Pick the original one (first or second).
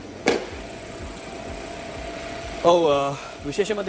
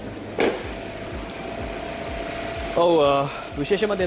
second